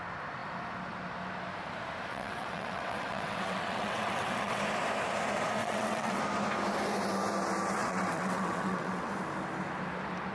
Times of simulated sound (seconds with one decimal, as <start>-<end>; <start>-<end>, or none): 2.1-4.6; 5.6-6.2; 7.8-9.1